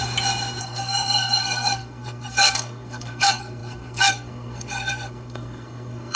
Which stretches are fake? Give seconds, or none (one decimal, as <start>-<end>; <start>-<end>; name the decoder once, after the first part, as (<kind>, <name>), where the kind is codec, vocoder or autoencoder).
0.6-6.2 (codec, SNAC)